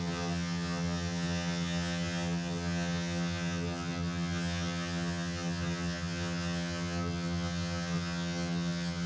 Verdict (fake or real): fake